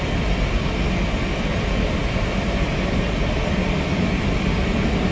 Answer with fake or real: real